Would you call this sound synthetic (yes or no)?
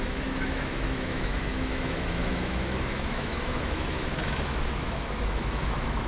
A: yes